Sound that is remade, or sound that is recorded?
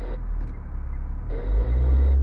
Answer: recorded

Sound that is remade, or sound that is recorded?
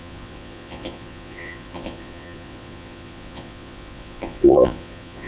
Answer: remade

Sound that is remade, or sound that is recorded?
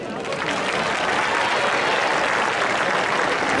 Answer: recorded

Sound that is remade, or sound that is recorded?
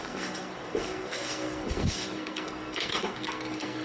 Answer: remade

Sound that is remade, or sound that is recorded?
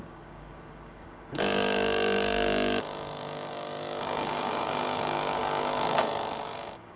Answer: remade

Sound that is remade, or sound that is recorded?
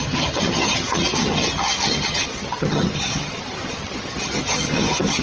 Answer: remade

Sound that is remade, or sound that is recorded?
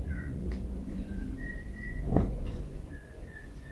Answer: remade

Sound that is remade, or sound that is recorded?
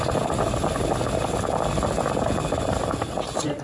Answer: recorded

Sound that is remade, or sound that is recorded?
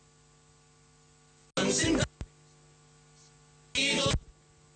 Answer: recorded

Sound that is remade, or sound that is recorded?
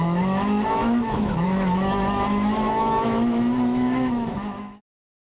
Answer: remade